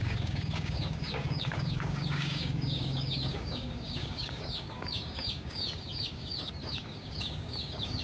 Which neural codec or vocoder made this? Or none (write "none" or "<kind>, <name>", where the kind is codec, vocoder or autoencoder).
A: codec, DAC